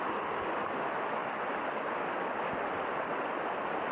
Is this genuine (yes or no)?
no